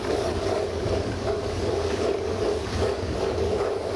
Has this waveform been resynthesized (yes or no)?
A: yes